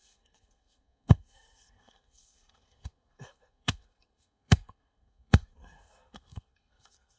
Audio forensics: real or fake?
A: fake